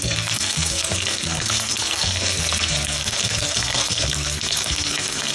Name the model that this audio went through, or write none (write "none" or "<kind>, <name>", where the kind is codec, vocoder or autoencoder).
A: codec, SNAC